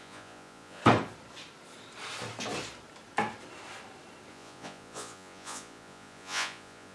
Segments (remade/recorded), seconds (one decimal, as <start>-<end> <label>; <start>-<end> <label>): 0.0-0.8 remade; 0.8-4.3 recorded; 4.3-6.9 remade